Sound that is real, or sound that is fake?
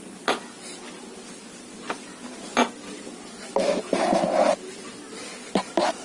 real